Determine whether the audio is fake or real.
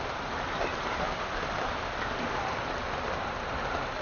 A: real